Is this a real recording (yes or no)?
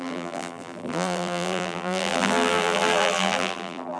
no